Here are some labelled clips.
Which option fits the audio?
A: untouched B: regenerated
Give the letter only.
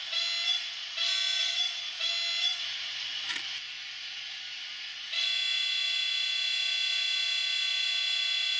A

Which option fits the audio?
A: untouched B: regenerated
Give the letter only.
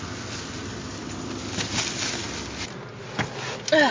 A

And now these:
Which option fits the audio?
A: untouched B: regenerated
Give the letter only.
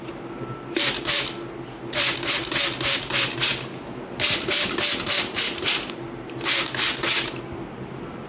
A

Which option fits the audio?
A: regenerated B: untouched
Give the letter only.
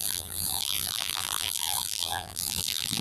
A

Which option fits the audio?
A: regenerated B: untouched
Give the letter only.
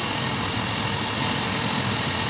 B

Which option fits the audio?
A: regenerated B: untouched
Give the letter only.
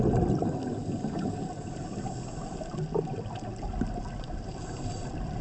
B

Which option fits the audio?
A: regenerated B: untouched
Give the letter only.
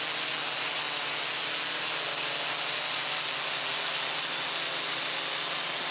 B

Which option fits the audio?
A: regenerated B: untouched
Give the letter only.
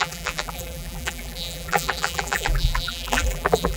A